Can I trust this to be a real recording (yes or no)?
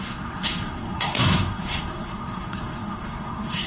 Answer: no